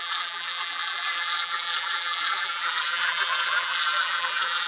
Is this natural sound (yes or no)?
no